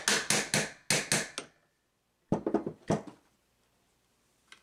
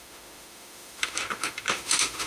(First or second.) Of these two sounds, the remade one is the second